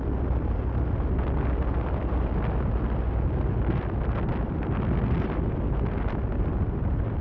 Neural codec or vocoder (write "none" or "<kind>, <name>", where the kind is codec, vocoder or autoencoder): none